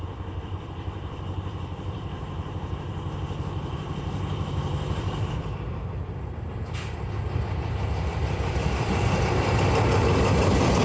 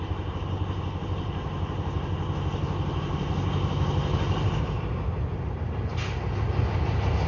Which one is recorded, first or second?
second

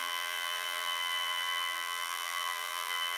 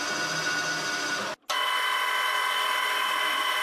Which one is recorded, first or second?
second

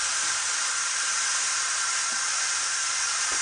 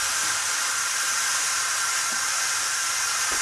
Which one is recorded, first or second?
second